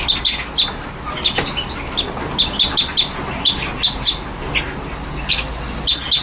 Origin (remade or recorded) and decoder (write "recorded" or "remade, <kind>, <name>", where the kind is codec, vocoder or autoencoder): recorded